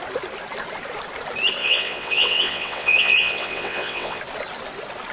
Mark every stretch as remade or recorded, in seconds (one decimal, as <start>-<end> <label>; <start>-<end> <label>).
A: 0.0-1.6 recorded; 1.6-4.2 remade; 4.2-5.1 recorded